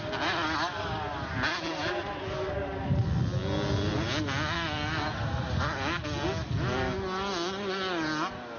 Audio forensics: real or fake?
real